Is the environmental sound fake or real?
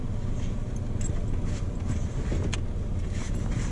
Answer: real